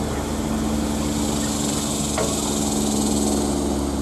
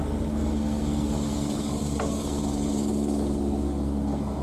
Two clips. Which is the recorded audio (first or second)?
first